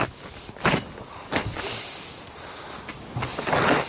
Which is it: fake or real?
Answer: real